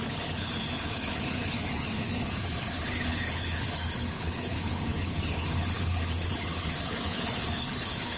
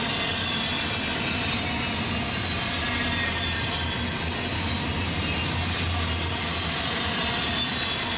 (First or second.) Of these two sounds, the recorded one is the second